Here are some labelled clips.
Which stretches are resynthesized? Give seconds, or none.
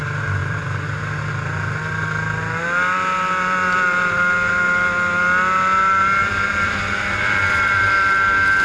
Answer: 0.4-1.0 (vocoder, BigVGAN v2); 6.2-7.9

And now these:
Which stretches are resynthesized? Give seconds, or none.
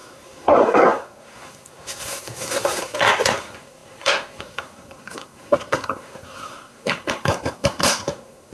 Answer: 0.0-8.5 (codec, SNAC)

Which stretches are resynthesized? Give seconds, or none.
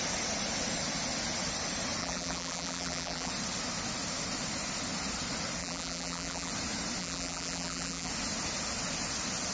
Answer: 2.0-3.3 (vocoder, BigVGAN v2); 5.6-6.5; 7.0-8.1